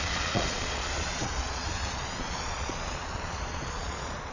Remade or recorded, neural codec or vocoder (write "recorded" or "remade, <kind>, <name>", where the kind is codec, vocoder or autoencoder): remade, vocoder, Vocos